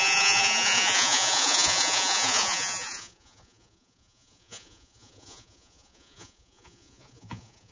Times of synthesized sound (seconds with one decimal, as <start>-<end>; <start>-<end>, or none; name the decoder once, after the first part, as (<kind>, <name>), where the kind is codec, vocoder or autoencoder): 0.0-7.7 (vocoder, Vocos)